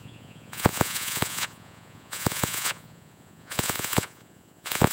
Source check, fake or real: fake